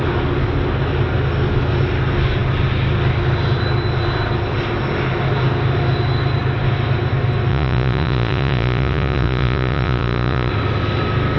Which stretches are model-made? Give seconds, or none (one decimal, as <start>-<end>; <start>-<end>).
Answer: 7.5-10.5